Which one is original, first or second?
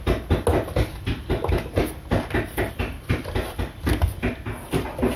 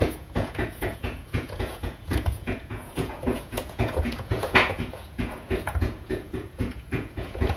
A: first